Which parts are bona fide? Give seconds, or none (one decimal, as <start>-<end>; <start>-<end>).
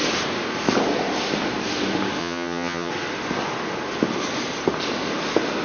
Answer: 0.0-2.2; 2.9-5.6